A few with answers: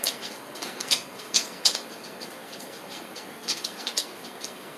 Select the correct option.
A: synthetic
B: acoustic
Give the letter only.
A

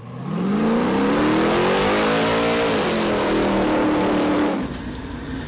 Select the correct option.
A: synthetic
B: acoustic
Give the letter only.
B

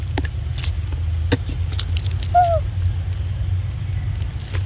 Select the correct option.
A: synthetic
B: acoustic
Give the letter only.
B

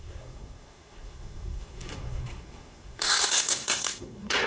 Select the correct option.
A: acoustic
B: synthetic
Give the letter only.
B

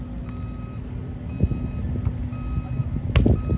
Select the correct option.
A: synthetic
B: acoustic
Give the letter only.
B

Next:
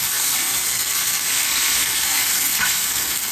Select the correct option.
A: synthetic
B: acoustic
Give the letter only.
A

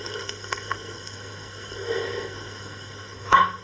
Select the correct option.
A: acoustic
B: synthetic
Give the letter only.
B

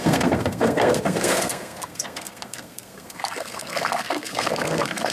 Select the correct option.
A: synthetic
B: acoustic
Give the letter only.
A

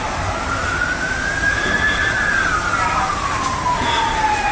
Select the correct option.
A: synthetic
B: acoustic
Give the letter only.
B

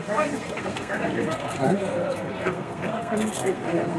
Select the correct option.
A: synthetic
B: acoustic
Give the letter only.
A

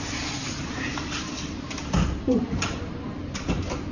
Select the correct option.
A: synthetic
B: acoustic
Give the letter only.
B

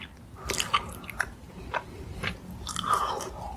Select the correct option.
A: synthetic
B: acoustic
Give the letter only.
B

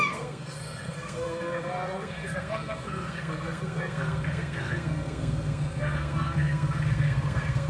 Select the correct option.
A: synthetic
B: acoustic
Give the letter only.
A